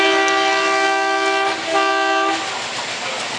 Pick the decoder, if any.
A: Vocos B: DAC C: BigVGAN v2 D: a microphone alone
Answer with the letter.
D